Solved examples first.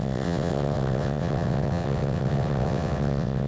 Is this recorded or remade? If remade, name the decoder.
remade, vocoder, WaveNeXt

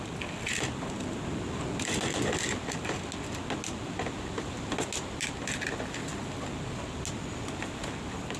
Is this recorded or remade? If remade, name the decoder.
recorded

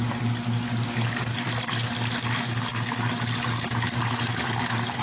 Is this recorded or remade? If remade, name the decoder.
recorded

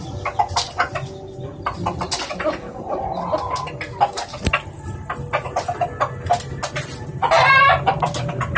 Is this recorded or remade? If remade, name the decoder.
recorded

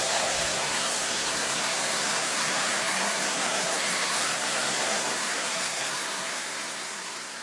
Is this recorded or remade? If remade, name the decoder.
remade, codec, SNAC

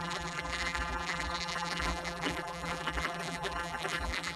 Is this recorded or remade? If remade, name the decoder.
remade, vocoder, BigVGAN v2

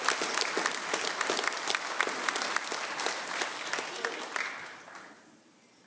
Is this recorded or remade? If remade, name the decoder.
recorded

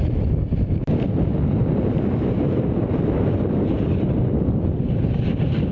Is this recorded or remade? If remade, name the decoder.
recorded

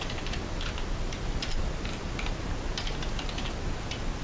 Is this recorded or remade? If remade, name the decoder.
recorded